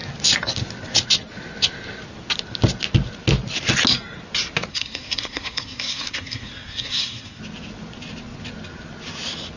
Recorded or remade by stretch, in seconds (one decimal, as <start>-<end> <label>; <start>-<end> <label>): 0.0-4.7 recorded; 4.7-7.4 remade; 7.4-9.6 recorded